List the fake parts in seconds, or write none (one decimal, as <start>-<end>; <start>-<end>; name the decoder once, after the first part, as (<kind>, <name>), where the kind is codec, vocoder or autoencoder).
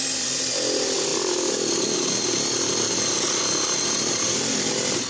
none